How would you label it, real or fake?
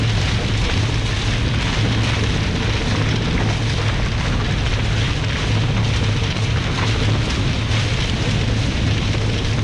real